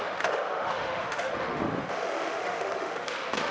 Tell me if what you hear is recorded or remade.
remade